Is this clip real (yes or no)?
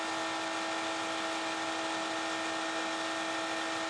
yes